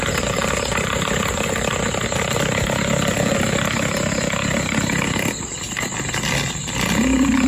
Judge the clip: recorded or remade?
recorded